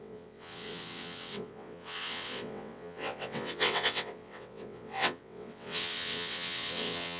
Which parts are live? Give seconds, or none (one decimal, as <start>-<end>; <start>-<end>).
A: none